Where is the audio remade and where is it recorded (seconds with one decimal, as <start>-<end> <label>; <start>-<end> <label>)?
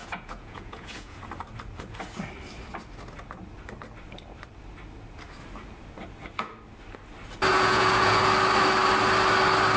0.0-1.2 remade; 1.2-7.5 recorded; 7.5-8.2 remade; 8.2-9.8 recorded